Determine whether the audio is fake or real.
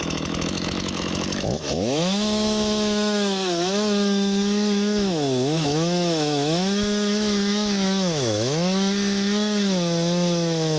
fake